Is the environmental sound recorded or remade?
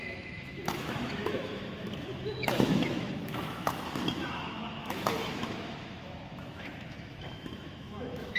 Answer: remade